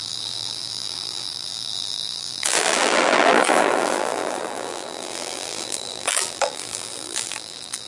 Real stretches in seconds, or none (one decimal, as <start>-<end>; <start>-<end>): none